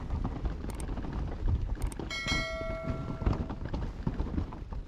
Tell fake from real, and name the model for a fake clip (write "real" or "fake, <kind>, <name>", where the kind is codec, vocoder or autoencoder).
real